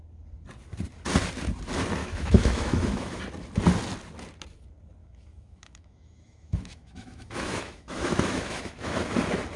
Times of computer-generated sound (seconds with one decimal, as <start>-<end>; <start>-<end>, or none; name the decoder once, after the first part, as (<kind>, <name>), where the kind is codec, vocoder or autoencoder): 2.0-3.2 (autoencoder, DAC-VAE); 5.0-9.1